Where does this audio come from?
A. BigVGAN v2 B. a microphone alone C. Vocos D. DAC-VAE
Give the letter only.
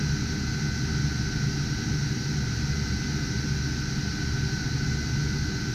B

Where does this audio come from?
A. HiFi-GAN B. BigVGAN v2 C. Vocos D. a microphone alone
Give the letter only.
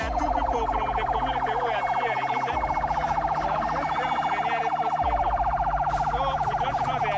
D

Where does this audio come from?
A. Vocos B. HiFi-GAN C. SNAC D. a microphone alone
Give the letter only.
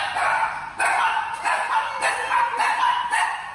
D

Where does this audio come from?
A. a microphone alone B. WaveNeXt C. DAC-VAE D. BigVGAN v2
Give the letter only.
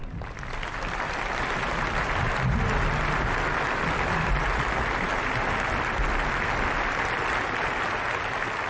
A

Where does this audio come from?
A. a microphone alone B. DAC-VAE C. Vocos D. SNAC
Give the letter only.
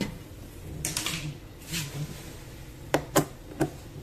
A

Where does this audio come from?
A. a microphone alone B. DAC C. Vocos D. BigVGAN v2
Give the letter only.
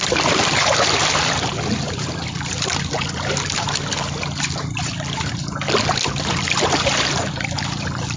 A